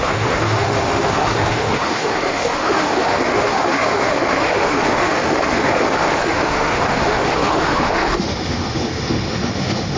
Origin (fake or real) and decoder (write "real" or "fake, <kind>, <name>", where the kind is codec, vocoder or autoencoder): fake, autoencoder, DAC-VAE